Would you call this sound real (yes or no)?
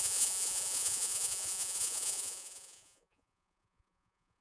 no